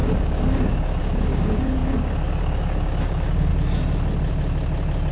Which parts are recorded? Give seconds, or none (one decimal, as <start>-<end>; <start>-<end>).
3.5-5.1